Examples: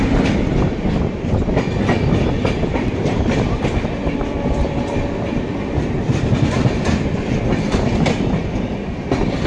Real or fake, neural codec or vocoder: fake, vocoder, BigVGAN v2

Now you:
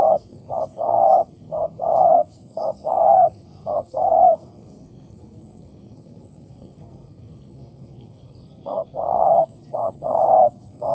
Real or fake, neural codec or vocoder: fake, codec, SNAC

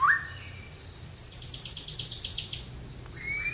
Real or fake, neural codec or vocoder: real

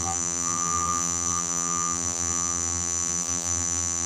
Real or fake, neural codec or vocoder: fake, vocoder, BigVGAN v2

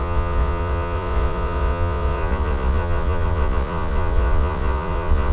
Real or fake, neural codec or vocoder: fake, vocoder, Vocos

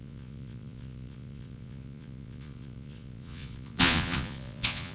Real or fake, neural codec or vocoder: fake, vocoder, Vocos